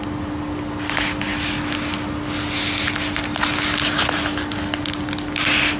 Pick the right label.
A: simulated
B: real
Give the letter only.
B